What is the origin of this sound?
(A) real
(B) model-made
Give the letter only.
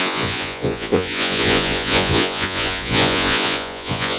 B